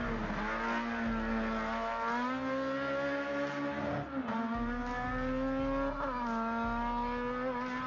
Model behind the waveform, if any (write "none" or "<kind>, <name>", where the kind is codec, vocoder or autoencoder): none